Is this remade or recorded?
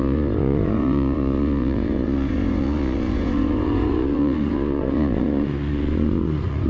remade